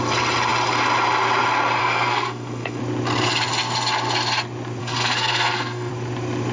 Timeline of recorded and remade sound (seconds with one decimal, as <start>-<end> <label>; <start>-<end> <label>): 0.0-1.8 recorded; 1.8-2.8 remade; 2.8-4.8 recorded; 4.8-5.9 remade; 5.9-6.5 recorded